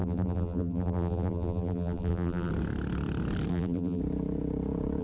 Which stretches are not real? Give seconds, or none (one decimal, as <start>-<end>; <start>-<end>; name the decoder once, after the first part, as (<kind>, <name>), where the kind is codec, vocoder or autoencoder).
0.0-2.5 (vocoder, BigVGAN v2); 3.5-4.0